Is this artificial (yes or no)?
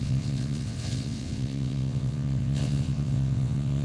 yes